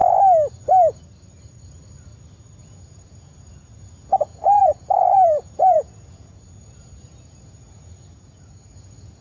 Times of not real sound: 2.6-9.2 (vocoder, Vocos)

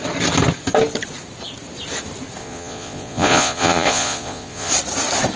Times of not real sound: 2.4-4.7 (vocoder, Vocos)

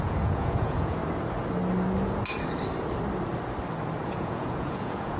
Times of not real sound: 0.0-1.0 (vocoder, Vocos); 4.1-5.2

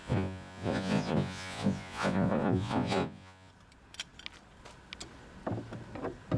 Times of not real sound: 0.0-3.5 (vocoder, Vocos)

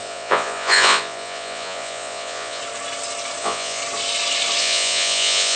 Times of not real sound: 0.0-2.6 (vocoder, Vocos); 3.4-3.8; 4.6-5.6

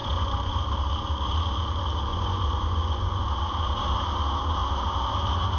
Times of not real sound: 0.0-0.6 (vocoder, Vocos); 2.1-3.2

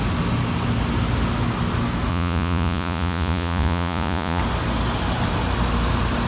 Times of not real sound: 2.1-4.4 (vocoder, Vocos)

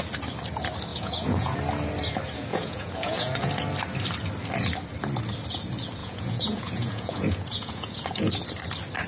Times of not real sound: 0.9-1.6 (vocoder, Vocos); 2.5-3.5; 6.0-8.3